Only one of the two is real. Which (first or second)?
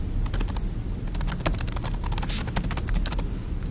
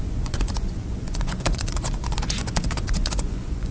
first